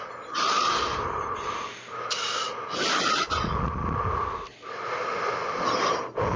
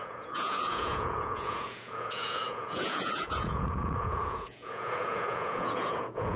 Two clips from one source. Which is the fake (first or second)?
second